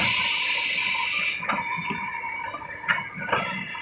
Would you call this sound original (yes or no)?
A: yes